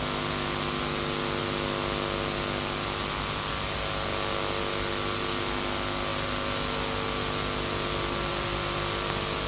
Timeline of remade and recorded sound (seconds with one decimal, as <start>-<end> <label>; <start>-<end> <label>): 0.0-9.5 recorded